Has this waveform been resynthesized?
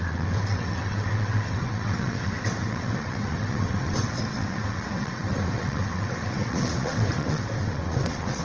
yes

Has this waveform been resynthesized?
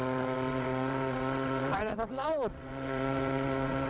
yes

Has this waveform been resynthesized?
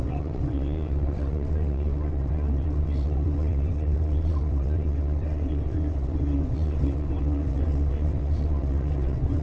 yes